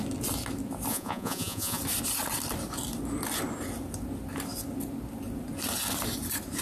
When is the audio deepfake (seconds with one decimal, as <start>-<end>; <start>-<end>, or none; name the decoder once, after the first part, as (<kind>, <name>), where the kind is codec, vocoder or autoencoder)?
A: 0.9-1.8 (vocoder, Vocos)